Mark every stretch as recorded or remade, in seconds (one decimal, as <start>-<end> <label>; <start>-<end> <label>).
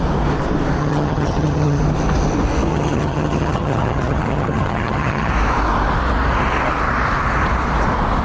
0.0-0.8 recorded; 0.8-1.8 remade; 1.8-2.7 recorded; 2.7-5.3 remade; 5.3-8.2 recorded